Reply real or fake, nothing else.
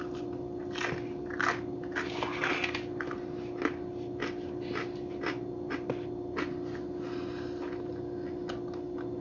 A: real